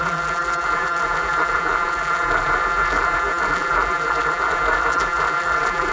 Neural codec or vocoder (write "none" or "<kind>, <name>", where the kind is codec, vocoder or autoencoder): vocoder, BigVGAN v2